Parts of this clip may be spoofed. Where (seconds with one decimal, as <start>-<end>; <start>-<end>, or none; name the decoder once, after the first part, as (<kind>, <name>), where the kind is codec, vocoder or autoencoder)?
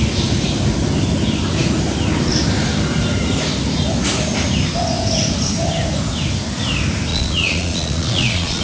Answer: 7.1-8.6 (vocoder, Vocos)